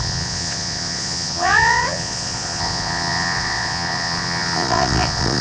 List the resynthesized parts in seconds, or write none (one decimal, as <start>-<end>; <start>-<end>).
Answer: 0.0-5.4